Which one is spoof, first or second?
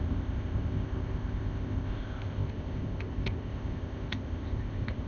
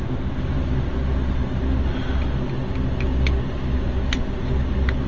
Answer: first